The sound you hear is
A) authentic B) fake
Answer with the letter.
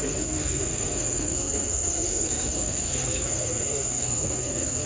B